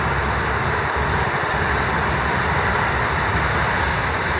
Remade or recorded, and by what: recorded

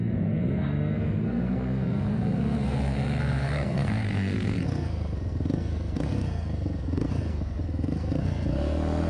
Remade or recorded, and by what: remade, codec, SNAC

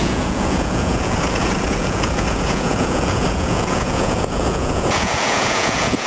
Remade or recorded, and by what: remade, vocoder, Vocos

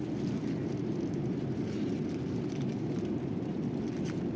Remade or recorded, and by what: remade, vocoder, BigVGAN v2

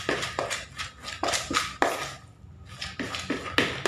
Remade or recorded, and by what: recorded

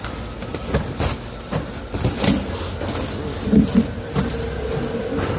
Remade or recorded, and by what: recorded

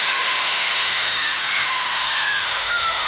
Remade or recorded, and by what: remade, autoencoder, DAC-VAE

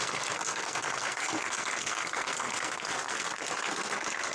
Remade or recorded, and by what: remade, codec, SNAC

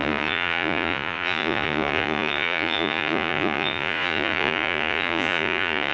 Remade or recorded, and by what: remade, vocoder, Vocos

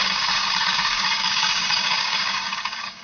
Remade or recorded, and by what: remade, codec, DAC